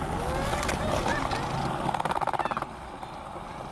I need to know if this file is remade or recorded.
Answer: recorded